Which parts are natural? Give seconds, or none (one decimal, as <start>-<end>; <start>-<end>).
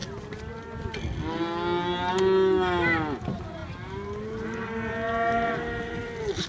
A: 0.0-6.5